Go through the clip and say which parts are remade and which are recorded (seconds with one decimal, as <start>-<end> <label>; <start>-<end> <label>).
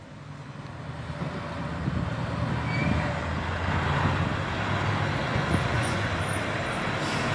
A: 0.0-5.2 recorded; 5.2-6.1 remade; 6.1-7.3 recorded